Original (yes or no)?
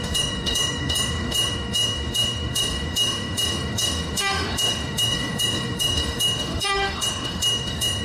no